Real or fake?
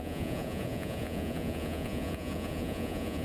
fake